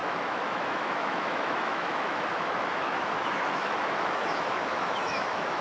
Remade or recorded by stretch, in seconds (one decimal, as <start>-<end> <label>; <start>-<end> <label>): 0.0-5.6 remade